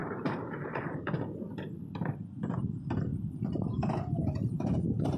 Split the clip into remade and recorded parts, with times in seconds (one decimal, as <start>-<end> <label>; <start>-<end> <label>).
0.0-0.8 remade; 0.8-3.1 recorded; 3.1-5.2 remade